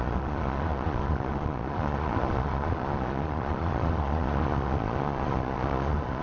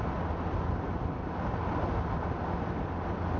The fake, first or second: first